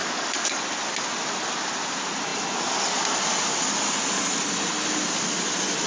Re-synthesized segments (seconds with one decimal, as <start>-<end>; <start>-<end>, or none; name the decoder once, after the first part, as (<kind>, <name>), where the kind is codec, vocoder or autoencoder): 0.0-0.6 (codec, DAC)